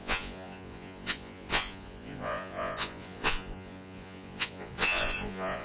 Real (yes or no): no